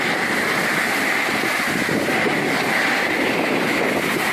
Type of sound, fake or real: real